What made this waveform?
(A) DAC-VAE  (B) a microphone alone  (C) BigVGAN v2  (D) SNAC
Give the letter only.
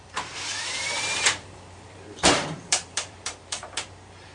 C